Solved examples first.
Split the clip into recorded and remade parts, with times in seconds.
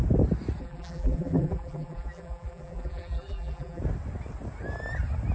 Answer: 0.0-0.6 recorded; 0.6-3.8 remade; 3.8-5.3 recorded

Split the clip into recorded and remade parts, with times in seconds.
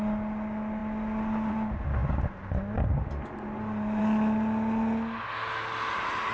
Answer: 0.0-6.3 recorded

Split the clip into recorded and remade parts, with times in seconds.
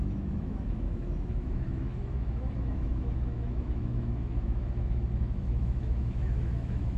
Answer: 0.0-7.0 remade